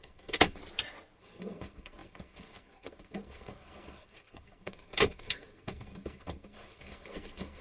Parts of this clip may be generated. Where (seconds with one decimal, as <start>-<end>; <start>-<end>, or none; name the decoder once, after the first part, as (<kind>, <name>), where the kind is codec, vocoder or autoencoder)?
0.0-0.6 (codec, SNAC); 1.2-7.6